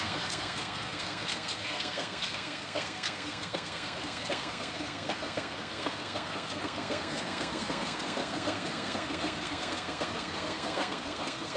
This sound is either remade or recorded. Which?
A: remade